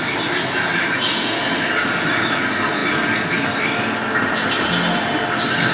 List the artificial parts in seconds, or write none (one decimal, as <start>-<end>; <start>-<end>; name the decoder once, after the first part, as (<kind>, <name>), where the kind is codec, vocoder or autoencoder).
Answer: none